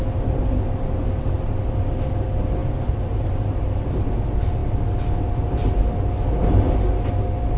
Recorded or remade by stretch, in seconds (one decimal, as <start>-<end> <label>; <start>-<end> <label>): 0.0-2.6 recorded; 2.6-3.6 remade; 3.6-7.6 recorded